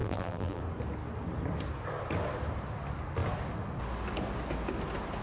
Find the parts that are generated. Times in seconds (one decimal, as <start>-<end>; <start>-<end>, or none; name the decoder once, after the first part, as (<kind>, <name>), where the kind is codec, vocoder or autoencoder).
0.0-0.6 (vocoder, BigVGAN v2)